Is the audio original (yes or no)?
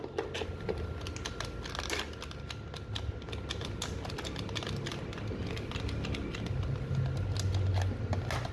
yes